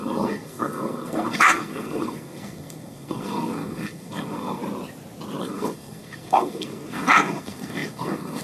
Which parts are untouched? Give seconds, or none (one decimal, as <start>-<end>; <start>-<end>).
4.6-5.4